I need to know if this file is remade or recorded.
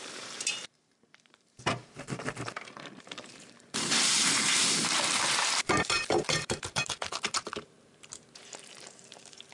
remade